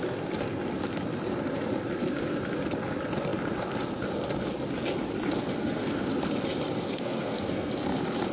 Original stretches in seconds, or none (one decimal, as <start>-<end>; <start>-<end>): 0.0-5.5; 6.1-6.9; 7.7-8.3